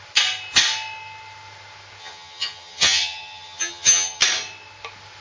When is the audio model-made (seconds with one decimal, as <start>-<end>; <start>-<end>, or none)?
2.0-4.2